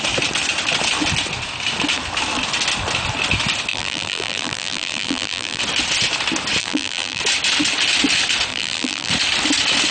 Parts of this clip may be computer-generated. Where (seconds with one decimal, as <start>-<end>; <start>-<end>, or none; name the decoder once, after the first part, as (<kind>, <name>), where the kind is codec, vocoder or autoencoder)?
3.7-5.6 (vocoder, BigVGAN v2); 6.6-7.2; 8.5-9.1